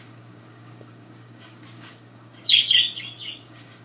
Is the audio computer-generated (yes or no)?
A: yes